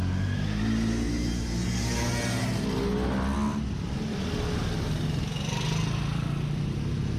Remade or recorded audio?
recorded